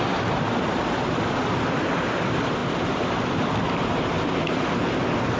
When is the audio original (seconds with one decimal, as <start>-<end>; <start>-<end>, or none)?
0.0-2.6; 4.4-5.4